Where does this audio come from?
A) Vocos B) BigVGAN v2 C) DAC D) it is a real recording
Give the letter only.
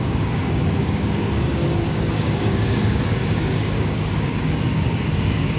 C